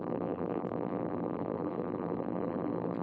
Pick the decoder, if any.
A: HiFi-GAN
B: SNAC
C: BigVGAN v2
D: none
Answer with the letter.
C